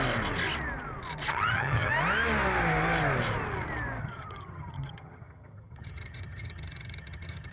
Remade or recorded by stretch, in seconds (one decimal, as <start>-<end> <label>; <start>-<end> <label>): 0.0-1.3 recorded; 1.3-1.9 remade; 1.9-4.0 recorded; 4.0-7.5 remade